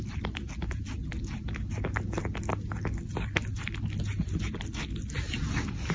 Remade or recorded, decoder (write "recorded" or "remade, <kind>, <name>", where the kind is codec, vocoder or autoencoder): recorded